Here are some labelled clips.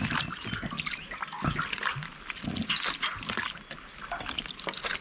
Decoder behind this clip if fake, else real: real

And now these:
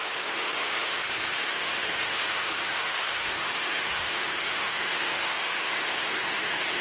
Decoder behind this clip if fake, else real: fake, autoencoder, DAC-VAE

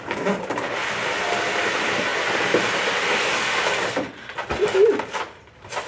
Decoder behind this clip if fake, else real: fake, vocoder, BigVGAN v2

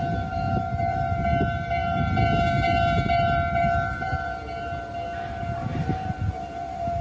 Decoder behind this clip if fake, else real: fake, vocoder, BigVGAN v2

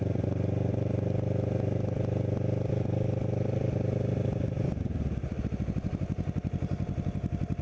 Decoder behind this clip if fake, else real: real